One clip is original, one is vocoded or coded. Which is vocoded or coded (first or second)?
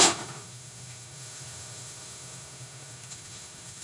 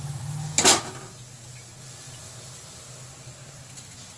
first